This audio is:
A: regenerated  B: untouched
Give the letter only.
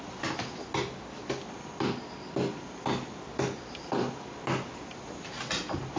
B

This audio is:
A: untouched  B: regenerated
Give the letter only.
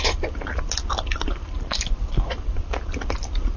A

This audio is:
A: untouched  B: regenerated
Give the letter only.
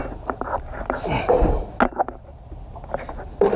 A